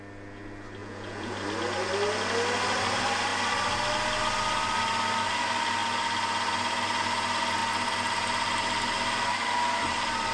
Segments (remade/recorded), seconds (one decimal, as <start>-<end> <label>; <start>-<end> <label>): 0.0-0.8 recorded; 0.8-1.3 remade; 1.3-10.3 recorded